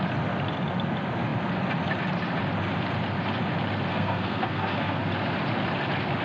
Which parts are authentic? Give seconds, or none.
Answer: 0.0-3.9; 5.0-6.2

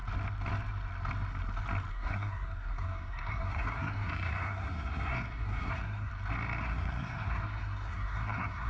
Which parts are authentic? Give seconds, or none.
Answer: 0.0-1.9; 6.1-6.6

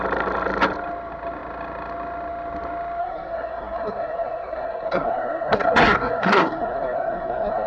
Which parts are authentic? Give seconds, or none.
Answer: 0.0-3.0

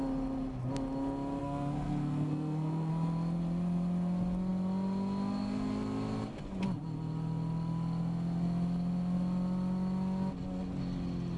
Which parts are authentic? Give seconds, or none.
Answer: 0.0-1.4; 2.9-11.4

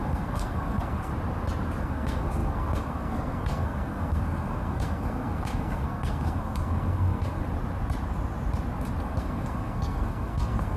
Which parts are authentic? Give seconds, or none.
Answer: 1.1-1.8; 7.4-9.0

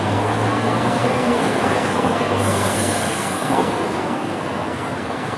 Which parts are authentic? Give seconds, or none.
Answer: none